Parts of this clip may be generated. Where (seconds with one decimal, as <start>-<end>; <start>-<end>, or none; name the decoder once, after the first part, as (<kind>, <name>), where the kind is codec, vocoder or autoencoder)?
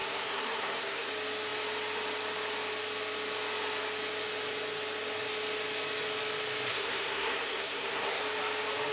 0.0-1.1 (codec, SNAC); 6.7-8.2